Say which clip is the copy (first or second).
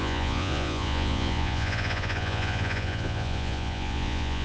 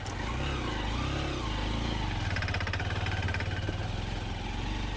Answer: first